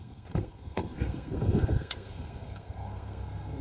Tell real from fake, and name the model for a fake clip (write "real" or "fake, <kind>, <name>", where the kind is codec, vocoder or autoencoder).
fake, codec, SNAC